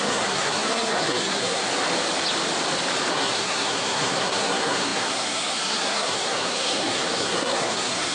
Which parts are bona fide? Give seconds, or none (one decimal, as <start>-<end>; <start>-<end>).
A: 1.6-3.1